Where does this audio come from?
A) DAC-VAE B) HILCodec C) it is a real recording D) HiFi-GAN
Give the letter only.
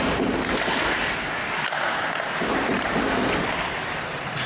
C